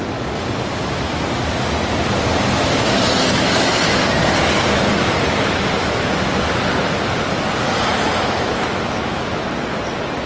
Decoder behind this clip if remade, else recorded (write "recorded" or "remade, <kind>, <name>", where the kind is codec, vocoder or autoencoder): recorded